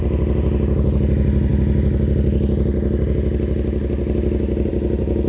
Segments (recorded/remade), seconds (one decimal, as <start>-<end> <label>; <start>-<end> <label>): 0.0-5.3 recorded